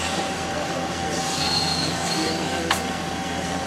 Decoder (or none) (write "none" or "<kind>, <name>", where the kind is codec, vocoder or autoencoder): codec, SNAC